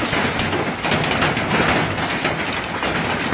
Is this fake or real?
real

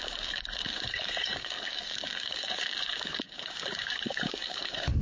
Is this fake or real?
fake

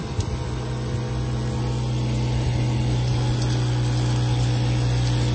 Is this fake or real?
real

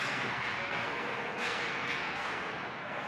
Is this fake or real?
fake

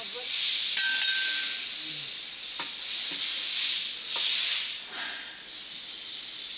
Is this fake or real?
real